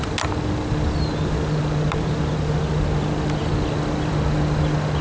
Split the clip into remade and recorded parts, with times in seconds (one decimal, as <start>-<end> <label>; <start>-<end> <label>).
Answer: 0.0-5.0 recorded